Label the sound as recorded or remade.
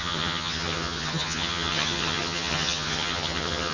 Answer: remade